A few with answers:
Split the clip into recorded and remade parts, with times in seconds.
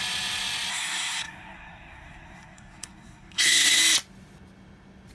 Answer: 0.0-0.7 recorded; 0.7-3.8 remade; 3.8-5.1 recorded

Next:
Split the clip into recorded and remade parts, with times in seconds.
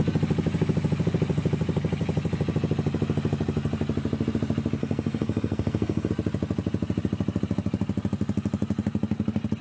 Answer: 0.0-4.8 recorded; 4.8-6.1 remade; 6.1-9.6 recorded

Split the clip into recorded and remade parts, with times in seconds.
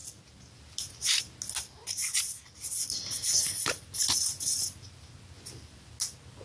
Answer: 0.0-6.4 recorded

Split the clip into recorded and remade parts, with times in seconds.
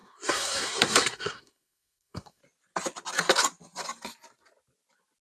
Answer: 0.0-2.4 remade; 2.4-5.2 recorded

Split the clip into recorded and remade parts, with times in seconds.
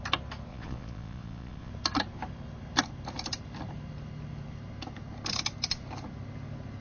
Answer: 0.0-0.5 recorded; 0.5-1.7 remade; 1.7-6.8 recorded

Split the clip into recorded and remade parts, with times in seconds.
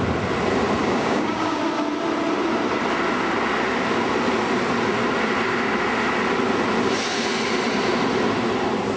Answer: 0.0-0.8 recorded; 0.8-1.6 remade; 1.6-9.0 recorded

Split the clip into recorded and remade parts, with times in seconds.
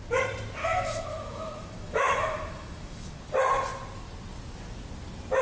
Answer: 0.0-0.6 recorded; 0.6-3.2 remade; 3.2-5.4 recorded